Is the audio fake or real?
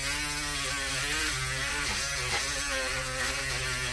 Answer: real